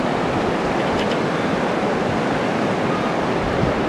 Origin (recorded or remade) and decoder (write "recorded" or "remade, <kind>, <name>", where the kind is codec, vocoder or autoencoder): recorded